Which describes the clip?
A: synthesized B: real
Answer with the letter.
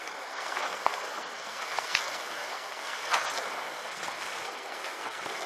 A